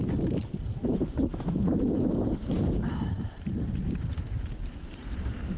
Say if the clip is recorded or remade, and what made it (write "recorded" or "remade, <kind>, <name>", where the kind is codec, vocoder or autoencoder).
remade, vocoder, BigVGAN v2